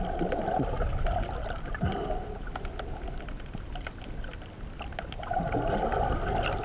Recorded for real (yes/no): yes